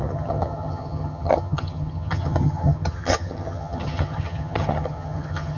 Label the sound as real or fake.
fake